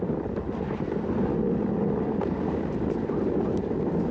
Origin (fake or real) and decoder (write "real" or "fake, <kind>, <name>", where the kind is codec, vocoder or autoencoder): real